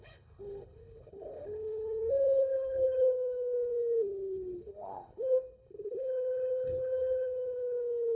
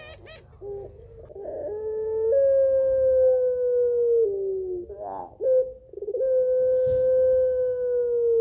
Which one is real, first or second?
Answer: second